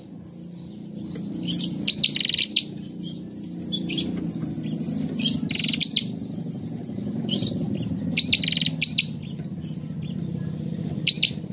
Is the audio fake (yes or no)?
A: no